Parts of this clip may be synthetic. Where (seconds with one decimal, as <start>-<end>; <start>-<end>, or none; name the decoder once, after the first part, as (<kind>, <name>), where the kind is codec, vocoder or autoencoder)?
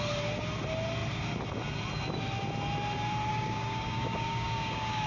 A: 3.3-5.1 (codec, DAC)